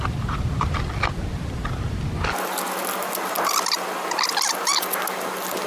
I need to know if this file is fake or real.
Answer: real